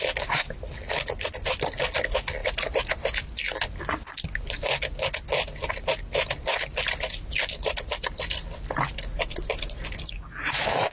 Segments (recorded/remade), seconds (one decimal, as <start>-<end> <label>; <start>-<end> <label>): 0.0-10.9 recorded